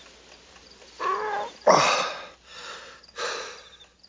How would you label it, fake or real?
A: real